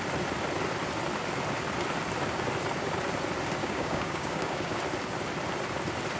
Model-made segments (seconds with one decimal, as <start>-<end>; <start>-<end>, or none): 3.6-4.8